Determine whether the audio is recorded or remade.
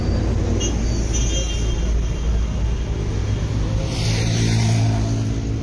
recorded